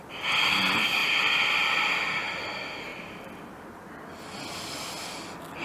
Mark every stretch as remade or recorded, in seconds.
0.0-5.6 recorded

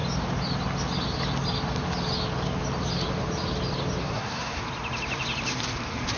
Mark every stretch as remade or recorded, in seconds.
0.0-4.0 recorded; 4.0-4.6 remade; 4.6-6.2 recorded

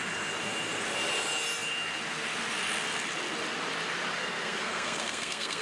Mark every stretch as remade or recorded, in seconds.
0.0-4.2 recorded; 4.2-5.6 remade

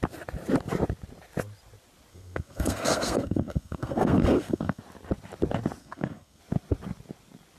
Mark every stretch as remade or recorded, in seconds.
0.0-2.1 recorded; 2.1-4.8 remade; 4.8-5.8 recorded; 5.8-6.4 remade; 6.4-7.6 recorded

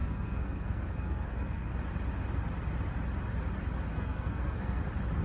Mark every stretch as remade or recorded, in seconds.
0.0-1.7 remade; 1.7-3.9 recorded; 3.9-4.8 remade; 4.8-5.2 recorded

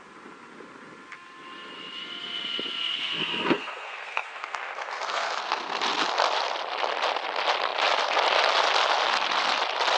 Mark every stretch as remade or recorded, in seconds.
0.0-2.9 recorded; 2.9-5.8 remade; 5.8-10.0 recorded